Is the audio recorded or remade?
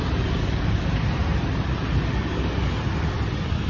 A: remade